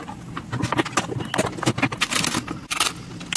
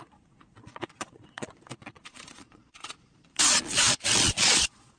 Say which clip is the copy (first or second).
second